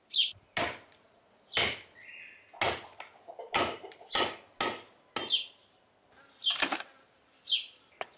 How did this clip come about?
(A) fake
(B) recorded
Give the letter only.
B